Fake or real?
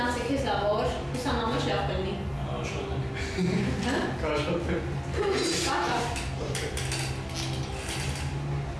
real